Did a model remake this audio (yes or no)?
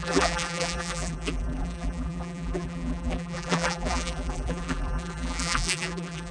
yes